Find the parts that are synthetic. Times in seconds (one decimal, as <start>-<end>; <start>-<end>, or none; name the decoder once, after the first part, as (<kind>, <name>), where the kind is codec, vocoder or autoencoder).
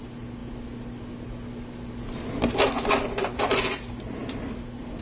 none